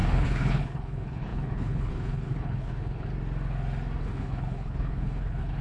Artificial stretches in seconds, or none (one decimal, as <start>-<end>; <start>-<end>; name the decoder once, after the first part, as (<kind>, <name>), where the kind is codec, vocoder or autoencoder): 0.0-3.1 (codec, HILCodec); 4.0-5.6